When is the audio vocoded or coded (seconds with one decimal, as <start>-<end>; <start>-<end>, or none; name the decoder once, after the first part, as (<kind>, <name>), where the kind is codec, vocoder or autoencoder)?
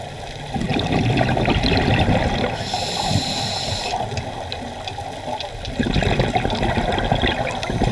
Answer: 0.7-3.2 (vocoder, BigVGAN v2)